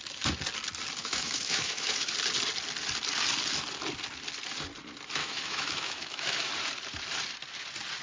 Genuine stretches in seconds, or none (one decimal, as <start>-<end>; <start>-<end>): 0.0-1.0; 2.1-5.2; 6.5-8.0